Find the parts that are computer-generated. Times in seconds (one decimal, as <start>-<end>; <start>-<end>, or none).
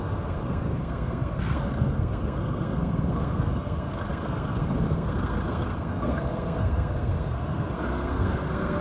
0.0-8.8